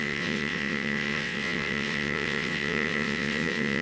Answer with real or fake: fake